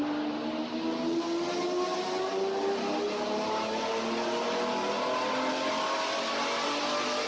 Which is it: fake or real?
real